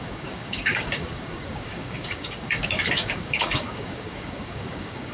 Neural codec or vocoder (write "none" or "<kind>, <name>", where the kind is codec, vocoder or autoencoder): codec, DAC